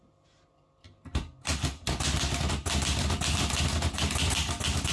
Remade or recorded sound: recorded